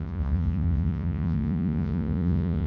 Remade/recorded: remade